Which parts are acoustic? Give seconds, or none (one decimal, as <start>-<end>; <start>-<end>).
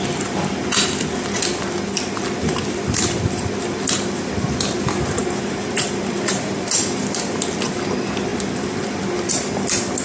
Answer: 0.0-10.0